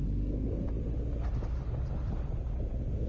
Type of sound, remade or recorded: recorded